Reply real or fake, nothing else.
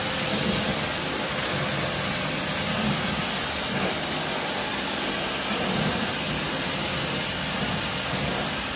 real